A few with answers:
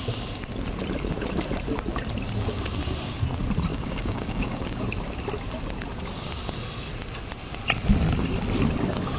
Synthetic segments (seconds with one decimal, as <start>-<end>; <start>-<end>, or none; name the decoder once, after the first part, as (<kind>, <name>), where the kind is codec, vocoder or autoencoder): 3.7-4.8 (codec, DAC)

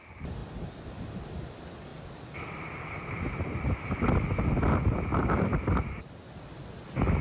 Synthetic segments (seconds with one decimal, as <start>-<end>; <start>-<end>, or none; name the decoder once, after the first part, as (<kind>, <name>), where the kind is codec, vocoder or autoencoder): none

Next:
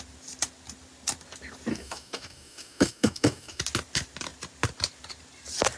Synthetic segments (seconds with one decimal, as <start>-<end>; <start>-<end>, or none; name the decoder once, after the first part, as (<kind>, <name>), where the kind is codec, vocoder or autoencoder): 1.7-3.6 (codec, DAC)